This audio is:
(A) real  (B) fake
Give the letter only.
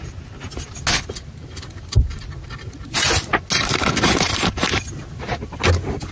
A